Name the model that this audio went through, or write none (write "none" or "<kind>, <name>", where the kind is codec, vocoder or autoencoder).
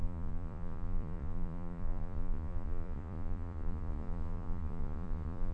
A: vocoder, Vocos